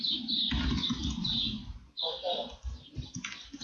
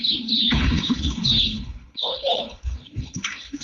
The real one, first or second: first